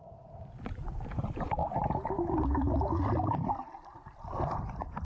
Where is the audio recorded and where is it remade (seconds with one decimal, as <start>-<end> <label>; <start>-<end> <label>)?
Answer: 0.0-1.6 remade; 1.6-2.3 recorded; 2.3-3.9 remade; 3.9-5.0 recorded